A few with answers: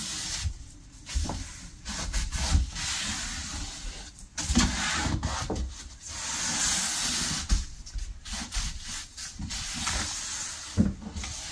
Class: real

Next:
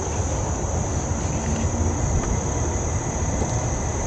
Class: real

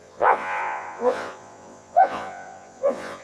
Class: fake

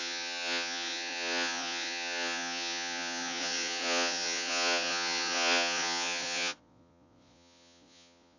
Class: fake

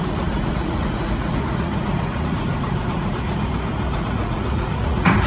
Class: fake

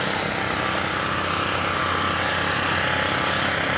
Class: real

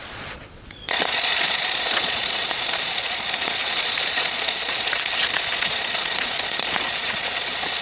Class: fake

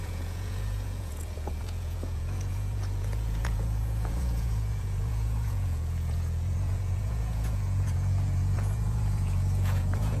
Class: fake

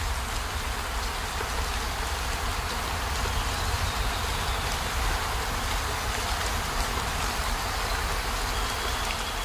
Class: real